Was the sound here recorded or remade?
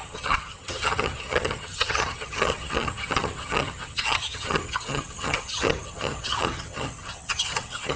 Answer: remade